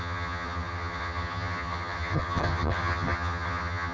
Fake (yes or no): yes